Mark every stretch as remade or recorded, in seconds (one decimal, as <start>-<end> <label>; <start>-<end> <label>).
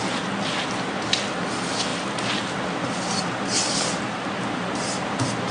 0.0-5.5 recorded